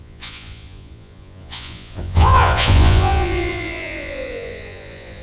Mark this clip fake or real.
fake